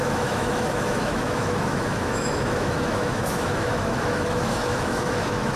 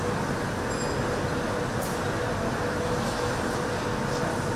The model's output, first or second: first